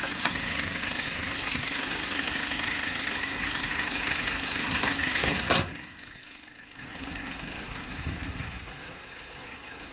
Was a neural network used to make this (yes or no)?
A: yes